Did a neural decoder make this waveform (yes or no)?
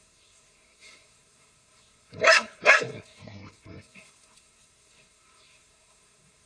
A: yes